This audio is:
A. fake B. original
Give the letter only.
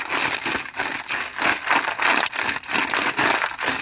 B